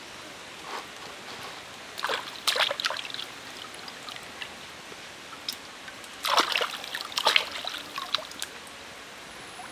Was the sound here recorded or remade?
recorded